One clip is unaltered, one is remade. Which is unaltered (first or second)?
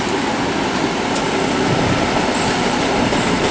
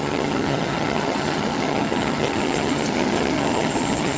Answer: first